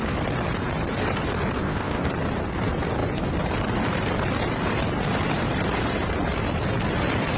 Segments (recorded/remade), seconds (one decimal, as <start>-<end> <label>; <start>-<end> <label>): 0.0-1.6 recorded; 1.6-2.1 remade; 2.1-7.4 recorded